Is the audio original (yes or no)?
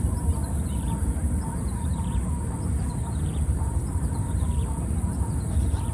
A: no